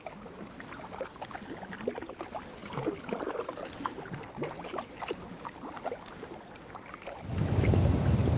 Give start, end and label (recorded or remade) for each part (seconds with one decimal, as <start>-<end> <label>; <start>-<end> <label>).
0.0-8.4 recorded